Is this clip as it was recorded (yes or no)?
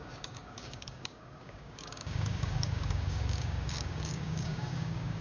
no